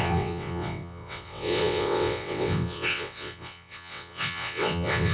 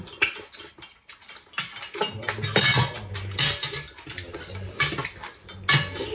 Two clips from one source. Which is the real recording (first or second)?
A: second